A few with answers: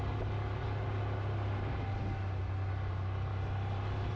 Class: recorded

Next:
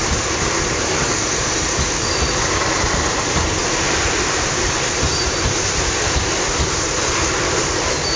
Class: remade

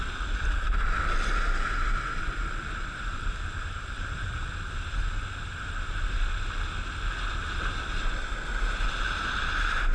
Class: recorded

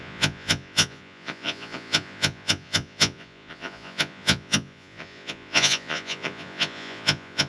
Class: remade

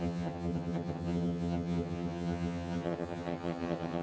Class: remade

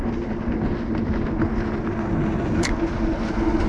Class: recorded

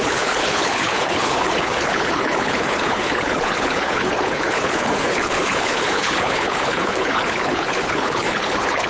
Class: remade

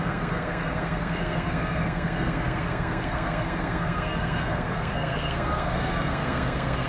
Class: remade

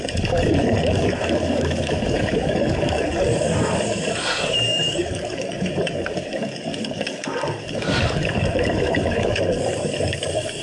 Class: remade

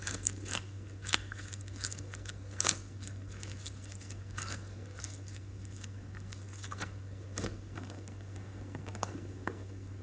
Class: remade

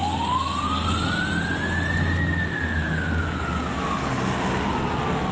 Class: recorded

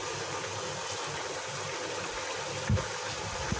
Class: recorded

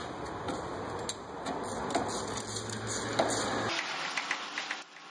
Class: recorded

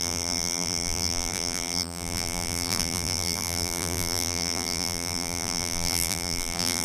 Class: remade